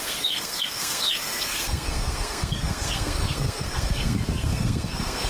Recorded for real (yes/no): no